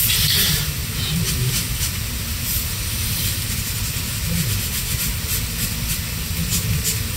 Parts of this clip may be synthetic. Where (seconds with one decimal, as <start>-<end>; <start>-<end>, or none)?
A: none